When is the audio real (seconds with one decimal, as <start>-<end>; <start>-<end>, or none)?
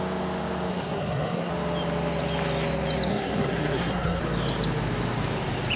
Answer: 0.0-0.7; 1.5-3.1; 4.2-5.8